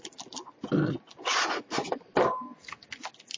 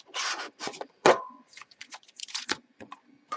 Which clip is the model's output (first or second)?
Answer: second